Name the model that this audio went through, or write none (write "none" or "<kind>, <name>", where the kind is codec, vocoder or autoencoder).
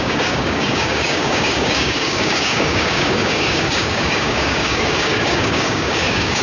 codec, DAC